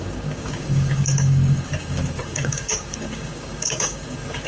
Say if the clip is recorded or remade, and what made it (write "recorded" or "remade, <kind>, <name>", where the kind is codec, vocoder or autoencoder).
remade, codec, DAC